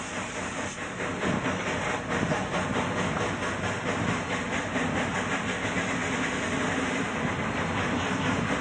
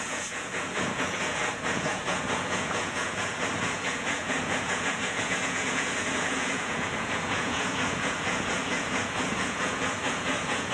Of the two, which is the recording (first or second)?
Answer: first